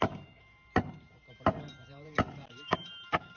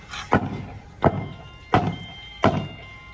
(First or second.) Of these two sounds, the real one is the second